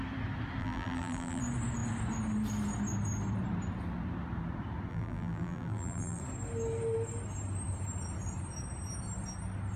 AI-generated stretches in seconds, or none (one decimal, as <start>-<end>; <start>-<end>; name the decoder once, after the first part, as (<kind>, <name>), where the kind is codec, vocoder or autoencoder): 0.6-1.4 (vocoder, BigVGAN v2); 4.9-6.2